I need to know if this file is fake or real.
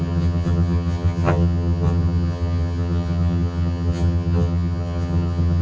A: fake